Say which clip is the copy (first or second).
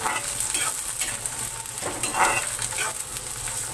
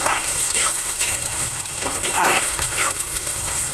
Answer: second